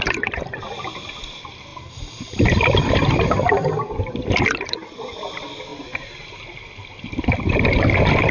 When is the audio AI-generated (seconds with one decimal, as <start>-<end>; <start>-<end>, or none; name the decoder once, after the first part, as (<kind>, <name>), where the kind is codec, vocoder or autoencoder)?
none